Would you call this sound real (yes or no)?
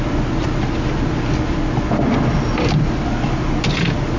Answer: yes